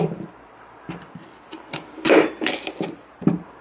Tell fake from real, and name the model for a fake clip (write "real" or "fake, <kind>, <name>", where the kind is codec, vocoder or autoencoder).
real